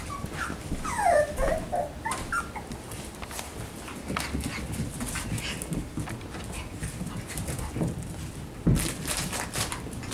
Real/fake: real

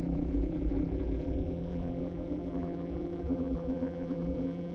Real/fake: fake